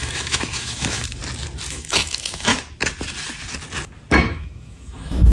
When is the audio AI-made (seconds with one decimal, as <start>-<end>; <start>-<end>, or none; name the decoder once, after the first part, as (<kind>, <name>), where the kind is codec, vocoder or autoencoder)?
0.0-1.2 (autoencoder, DAC-VAE); 1.7-2.5; 4.1-5.3